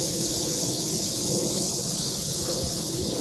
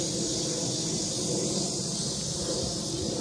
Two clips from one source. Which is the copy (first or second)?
first